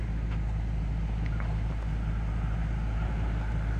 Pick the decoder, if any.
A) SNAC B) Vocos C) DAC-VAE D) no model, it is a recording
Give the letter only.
D